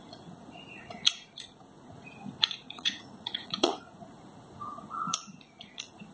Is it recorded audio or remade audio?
remade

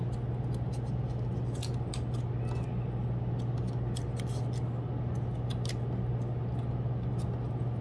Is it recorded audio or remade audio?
recorded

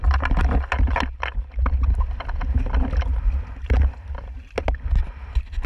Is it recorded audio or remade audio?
recorded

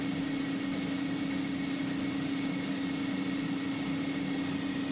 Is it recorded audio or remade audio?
recorded